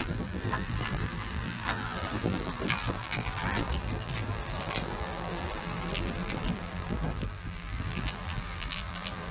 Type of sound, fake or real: fake